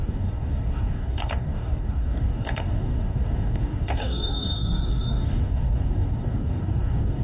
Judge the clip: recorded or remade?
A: remade